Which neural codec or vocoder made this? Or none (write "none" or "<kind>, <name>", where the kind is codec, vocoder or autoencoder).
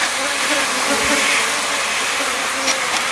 none